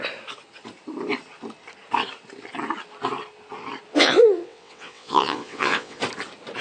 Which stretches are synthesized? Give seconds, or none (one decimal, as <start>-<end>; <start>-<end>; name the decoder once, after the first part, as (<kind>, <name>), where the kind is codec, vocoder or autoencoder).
3.9-6.0 (vocoder, WaveNeXt)